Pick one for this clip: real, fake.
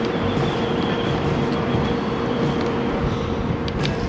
real